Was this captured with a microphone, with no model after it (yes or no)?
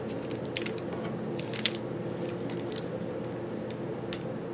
yes